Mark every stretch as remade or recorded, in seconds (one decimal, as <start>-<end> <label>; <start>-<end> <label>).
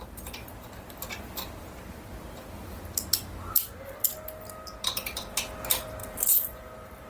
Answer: 0.0-6.0 recorded; 6.0-7.1 remade